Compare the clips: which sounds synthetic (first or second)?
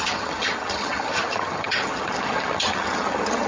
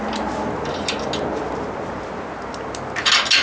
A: first